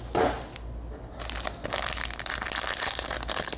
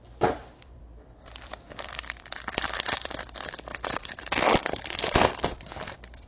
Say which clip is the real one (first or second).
first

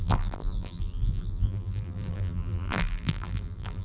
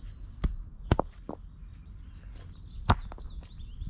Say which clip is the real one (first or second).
second